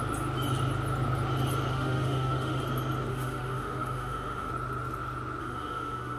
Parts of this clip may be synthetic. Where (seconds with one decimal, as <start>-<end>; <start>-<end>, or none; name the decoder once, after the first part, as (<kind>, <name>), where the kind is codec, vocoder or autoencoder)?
1.7-2.6 (autoencoder, DAC-VAE); 3.1-4.5; 5.4-6.2